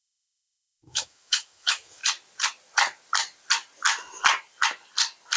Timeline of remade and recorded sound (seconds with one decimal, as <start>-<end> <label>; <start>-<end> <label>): 0.0-2.0 remade; 2.0-5.4 recorded